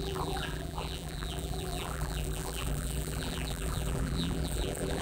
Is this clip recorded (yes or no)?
no